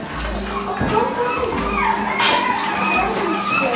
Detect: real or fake real